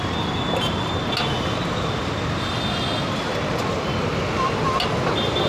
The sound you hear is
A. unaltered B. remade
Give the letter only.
A